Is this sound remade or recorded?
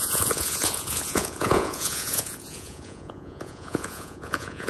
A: remade